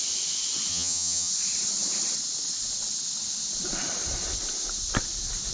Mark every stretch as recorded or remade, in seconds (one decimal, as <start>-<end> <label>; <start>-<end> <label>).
0.0-0.7 recorded; 0.7-1.3 remade; 1.3-5.5 recorded